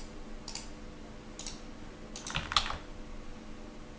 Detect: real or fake real